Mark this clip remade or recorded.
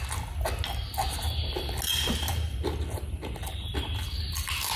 recorded